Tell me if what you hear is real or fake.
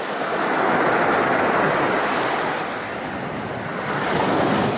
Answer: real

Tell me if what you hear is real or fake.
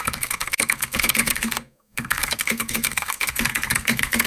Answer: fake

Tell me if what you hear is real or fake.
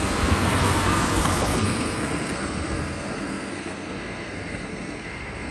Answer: fake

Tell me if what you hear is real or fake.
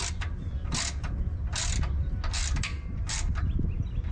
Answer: real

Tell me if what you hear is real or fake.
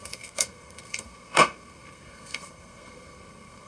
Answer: fake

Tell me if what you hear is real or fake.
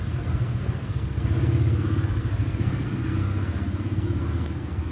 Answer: fake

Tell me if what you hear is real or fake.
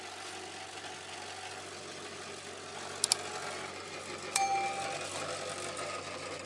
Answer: real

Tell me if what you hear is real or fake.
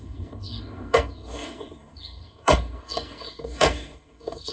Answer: fake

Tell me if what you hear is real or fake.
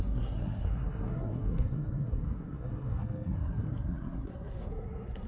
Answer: fake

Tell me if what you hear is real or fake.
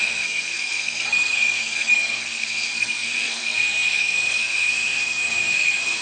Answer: fake